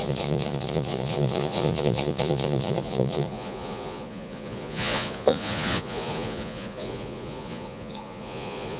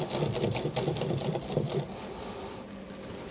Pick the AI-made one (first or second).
first